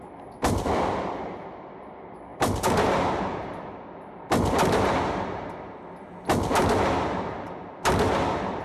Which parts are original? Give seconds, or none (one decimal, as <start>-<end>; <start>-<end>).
0.0-8.6